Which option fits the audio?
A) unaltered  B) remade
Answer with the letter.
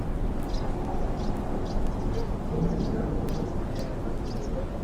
A